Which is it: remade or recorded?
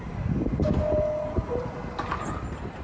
recorded